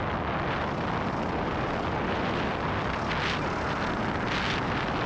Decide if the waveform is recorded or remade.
recorded